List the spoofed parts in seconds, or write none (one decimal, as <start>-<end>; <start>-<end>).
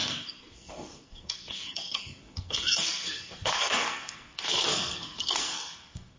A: 0.0-6.2